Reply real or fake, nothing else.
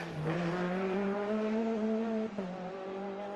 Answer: fake